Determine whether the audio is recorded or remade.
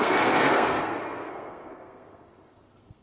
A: remade